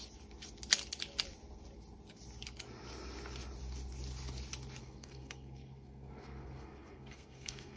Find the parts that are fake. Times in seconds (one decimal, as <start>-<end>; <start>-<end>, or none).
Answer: 4.8-7.8